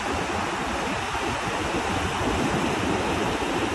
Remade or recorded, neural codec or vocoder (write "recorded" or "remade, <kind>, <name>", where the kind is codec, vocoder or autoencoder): recorded